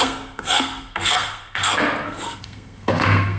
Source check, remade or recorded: remade